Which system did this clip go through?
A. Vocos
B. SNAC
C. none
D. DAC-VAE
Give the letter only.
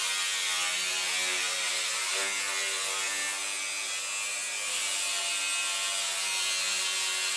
C